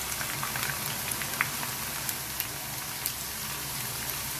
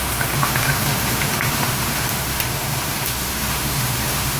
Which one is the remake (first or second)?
second